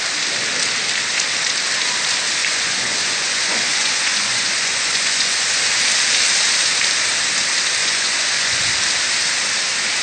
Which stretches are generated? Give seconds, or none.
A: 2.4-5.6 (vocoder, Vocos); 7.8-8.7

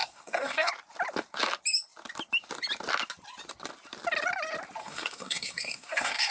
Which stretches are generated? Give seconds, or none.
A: 0.0-0.7 (codec, SNAC); 4.8-6.3

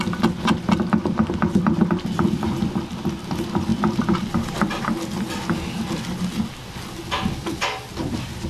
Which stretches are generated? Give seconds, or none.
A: 3.7-4.8 (vocoder, BigVGAN v2)